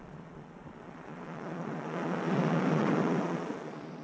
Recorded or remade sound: remade